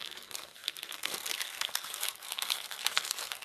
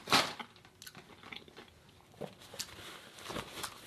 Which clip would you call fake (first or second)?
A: first